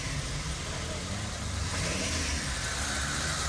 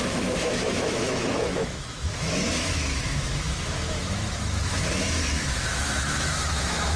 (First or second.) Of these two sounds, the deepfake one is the second